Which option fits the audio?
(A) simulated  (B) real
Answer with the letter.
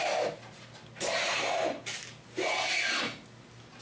B